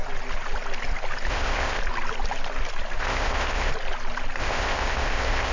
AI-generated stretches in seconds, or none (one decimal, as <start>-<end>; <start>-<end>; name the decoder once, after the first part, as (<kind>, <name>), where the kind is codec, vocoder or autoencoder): 1.3-1.8 (codec, ZipCodec); 3.0-3.7; 4.4-5.5